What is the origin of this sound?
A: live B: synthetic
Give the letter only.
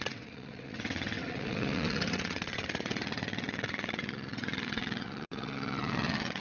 B